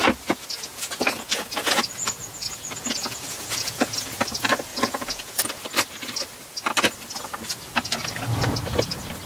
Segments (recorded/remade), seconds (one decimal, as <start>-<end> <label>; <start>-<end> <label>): 0.0-0.7 recorded; 0.7-4.1 remade; 4.1-4.7 recorded; 4.7-5.5 remade; 5.5-9.3 recorded